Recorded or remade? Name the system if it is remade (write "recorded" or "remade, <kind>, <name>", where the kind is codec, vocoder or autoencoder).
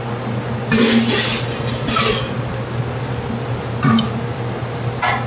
recorded